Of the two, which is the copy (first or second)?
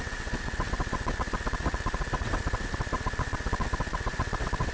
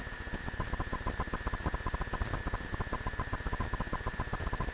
first